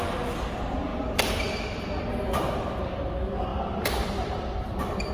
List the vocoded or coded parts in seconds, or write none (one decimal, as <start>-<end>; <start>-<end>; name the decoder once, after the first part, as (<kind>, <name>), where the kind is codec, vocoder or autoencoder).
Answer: 0.9-2.0 (vocoder, BigVGAN v2); 3.5-5.1